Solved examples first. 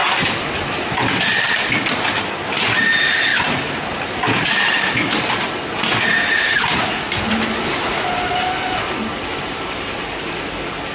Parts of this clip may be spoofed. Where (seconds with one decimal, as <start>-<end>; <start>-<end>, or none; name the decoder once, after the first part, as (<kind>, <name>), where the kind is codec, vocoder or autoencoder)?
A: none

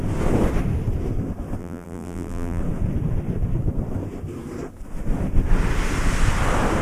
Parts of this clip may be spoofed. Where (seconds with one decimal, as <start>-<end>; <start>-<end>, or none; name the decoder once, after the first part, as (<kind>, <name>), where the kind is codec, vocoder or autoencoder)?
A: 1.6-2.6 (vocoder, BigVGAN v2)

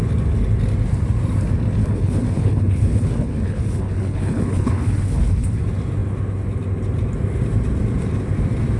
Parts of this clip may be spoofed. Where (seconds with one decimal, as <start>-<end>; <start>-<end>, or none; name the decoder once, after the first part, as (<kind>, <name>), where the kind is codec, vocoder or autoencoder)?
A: 1.8-5.6 (codec, HILCodec)